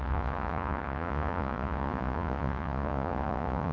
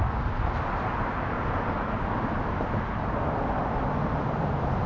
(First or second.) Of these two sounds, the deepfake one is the first